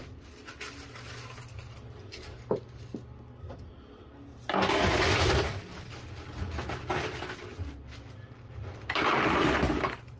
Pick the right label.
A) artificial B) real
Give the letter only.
B